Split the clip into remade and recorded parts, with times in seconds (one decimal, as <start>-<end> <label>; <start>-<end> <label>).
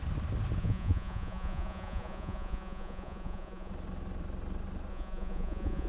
0.0-0.6 recorded; 0.6-3.7 remade; 3.7-4.9 recorded; 4.9-5.9 remade